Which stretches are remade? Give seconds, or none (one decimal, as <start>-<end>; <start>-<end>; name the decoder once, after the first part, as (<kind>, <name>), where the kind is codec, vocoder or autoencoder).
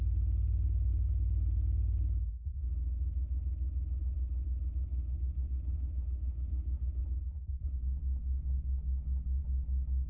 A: 4.9-7.0 (codec, DAC); 8.2-9.4